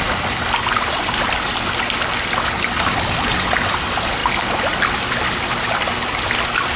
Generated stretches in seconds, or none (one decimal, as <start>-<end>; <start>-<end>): none